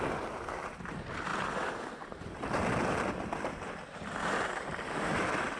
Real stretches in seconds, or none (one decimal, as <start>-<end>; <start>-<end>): 0.0-5.6